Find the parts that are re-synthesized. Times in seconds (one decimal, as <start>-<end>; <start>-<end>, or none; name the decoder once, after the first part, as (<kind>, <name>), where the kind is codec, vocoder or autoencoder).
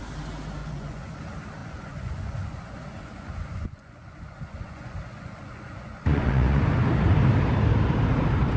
0.6-1.2 (vocoder, Vocos); 1.6-6.6